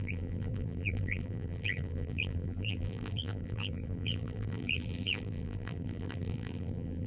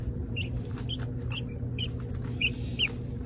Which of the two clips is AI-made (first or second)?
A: first